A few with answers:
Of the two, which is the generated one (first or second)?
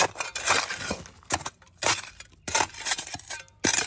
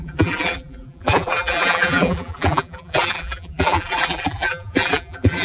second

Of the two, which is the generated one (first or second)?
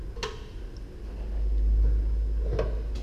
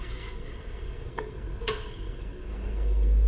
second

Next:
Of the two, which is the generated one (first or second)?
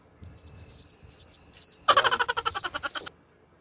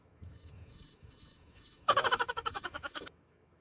second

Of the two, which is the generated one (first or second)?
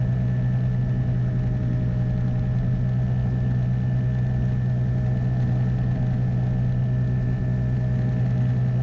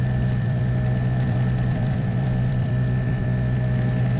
second